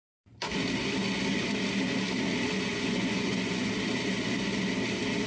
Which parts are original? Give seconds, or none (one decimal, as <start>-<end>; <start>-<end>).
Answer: 0.0-2.7; 3.7-5.3

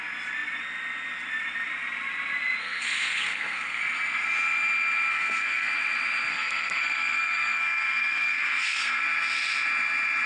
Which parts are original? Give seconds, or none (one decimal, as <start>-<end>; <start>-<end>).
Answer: 0.0-2.6; 3.8-5.1; 5.7-6.3; 9.0-10.3